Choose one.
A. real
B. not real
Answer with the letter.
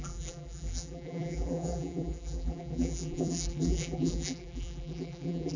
B